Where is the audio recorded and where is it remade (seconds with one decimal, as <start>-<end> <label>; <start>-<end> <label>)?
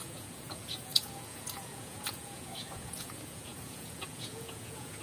0.0-5.0 remade